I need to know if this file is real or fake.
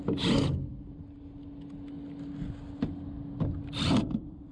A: real